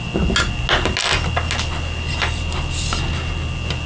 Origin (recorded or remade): recorded